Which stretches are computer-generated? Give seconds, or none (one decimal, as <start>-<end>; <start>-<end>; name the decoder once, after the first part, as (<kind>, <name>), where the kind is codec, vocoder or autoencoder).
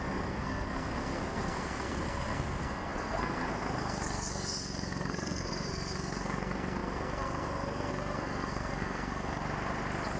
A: 0.0-9.4 (codec, SNAC)